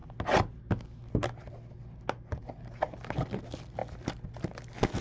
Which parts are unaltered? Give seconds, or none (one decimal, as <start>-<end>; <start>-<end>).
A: 0.0-5.0